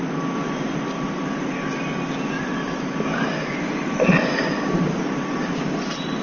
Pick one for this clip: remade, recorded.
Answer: recorded